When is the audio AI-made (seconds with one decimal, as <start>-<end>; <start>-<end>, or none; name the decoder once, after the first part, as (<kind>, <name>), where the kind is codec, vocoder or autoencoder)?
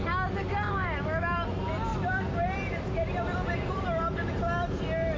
0.8-1.5 (vocoder, BigVGAN v2); 1.9-3.8